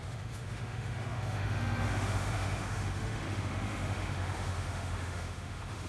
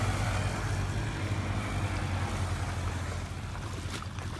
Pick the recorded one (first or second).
second